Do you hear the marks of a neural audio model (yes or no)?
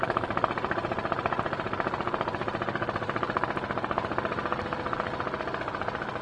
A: no